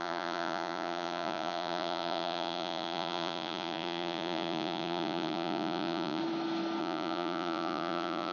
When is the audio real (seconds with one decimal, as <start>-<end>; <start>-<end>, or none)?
6.2-6.8